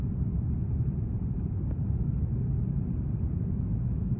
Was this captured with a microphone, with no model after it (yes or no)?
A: yes